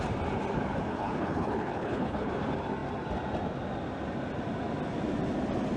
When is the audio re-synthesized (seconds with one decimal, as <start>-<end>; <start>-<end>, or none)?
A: 0.9-2.3